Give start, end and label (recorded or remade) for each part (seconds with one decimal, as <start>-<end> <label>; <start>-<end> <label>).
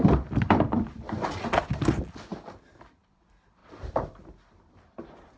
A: 0.0-5.4 recorded